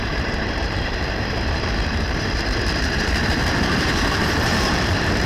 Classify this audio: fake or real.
fake